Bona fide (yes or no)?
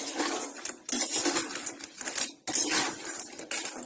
yes